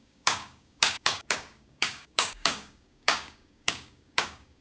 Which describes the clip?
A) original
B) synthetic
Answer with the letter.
B